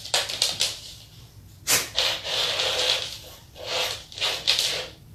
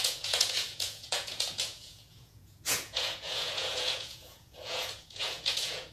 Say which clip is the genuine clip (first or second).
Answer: first